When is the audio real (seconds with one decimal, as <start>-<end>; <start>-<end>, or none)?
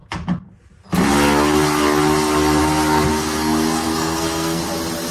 0.0-3.1; 4.6-5.1